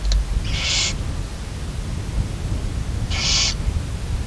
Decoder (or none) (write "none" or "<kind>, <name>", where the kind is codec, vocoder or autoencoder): none